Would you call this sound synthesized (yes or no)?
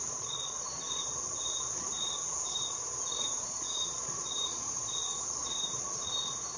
yes